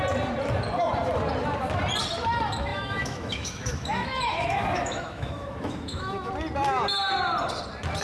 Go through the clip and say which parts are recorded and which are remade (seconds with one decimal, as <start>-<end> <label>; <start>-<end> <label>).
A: 0.0-2.7 recorded; 2.7-6.3 remade; 6.3-8.0 recorded